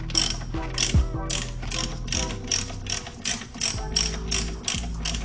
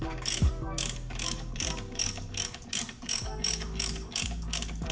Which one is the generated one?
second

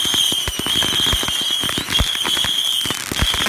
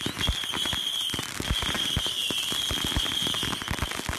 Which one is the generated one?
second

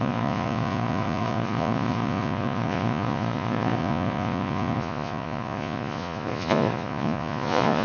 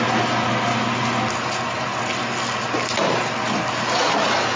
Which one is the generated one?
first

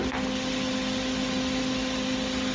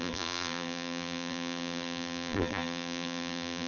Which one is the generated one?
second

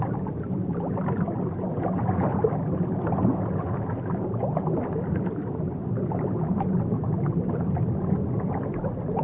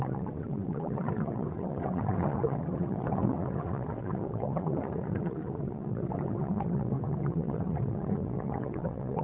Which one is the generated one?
second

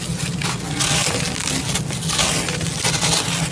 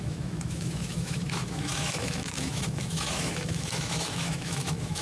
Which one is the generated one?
second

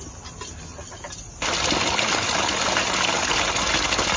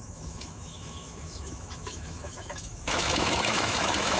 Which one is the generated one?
second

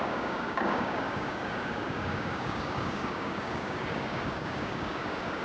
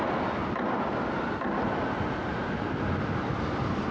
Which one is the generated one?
first